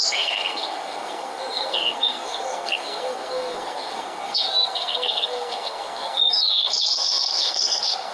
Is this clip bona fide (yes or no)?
no